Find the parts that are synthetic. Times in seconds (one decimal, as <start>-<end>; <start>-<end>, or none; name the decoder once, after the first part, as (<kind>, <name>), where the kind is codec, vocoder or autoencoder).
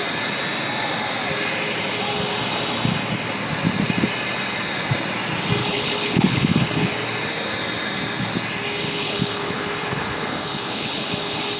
5.6-6.9 (codec, HILCodec); 8.8-11.6